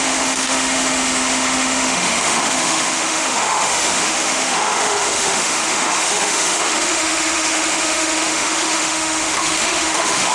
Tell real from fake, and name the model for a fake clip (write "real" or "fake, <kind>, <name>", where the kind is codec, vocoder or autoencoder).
fake, autoencoder, DAC-VAE